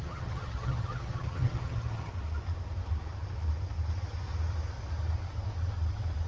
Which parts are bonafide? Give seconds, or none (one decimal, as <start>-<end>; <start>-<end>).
2.1-6.3